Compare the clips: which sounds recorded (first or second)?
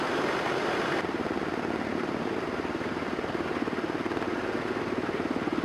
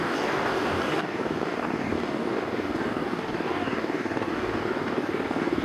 first